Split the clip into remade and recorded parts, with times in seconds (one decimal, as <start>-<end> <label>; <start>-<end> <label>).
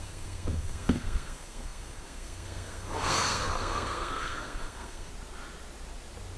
0.0-5.1 remade; 5.1-6.4 recorded